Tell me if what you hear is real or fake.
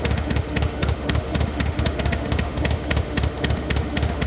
fake